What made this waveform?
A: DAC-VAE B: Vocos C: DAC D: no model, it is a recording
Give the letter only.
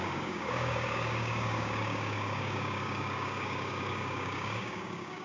C